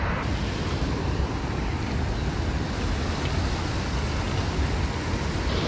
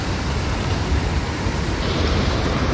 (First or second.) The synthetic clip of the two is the second